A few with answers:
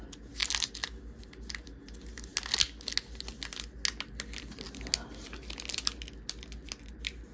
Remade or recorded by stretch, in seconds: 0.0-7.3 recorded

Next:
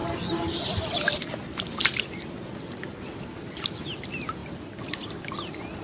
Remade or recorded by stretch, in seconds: 0.0-5.8 recorded

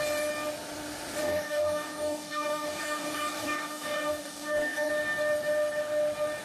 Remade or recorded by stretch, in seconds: 0.0-1.2 recorded; 1.2-4.9 remade; 4.9-6.4 recorded

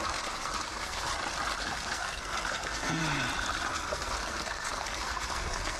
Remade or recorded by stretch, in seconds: 0.0-1.1 remade; 1.1-1.6 recorded; 1.6-3.0 remade; 3.0-3.7 recorded; 3.7-5.8 remade

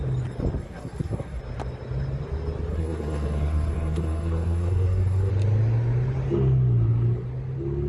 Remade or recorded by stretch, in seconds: 0.0-0.6 recorded; 0.6-1.4 remade; 1.4-2.7 recorded; 2.7-5.3 remade; 5.3-7.9 recorded

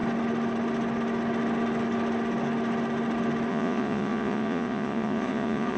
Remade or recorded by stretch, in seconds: 0.0-3.5 recorded; 3.5-5.8 remade